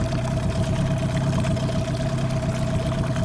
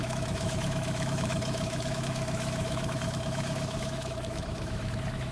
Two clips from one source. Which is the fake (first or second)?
second